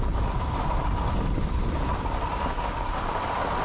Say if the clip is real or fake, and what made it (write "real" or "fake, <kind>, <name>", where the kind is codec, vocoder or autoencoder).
real